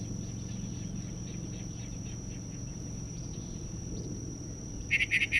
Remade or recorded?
remade